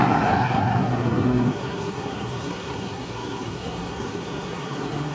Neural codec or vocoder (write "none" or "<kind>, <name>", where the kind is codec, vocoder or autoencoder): codec, SNAC